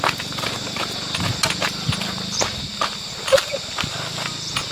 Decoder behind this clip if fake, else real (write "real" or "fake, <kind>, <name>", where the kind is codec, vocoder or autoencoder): real